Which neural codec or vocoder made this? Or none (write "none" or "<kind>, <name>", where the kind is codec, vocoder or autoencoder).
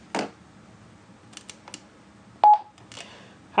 none